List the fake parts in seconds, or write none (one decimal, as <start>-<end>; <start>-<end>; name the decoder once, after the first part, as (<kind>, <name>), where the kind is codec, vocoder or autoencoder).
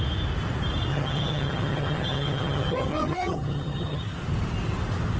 0.9-4.0 (vocoder, HiFi-GAN)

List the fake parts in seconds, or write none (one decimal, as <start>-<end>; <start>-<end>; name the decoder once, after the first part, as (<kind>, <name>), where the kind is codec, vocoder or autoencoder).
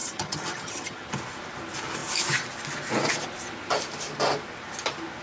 0.0-1.1 (vocoder, HiFi-GAN)